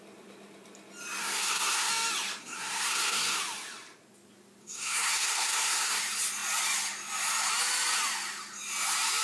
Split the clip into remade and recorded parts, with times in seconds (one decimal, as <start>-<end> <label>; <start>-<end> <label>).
0.0-1.2 recorded; 1.2-1.9 remade; 1.9-2.4 recorded; 2.4-3.4 remade; 3.4-4.6 recorded; 4.6-6.0 remade; 6.0-9.2 recorded